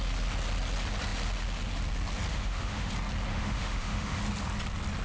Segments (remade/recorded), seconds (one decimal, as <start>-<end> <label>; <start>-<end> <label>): 0.0-2.3 recorded; 2.3-2.9 remade; 2.9-3.3 recorded; 3.3-4.2 remade; 4.2-5.0 recorded